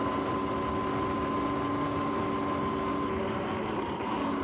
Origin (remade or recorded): recorded